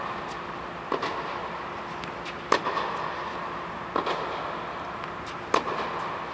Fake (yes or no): no